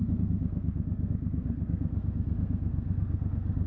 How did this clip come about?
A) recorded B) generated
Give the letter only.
B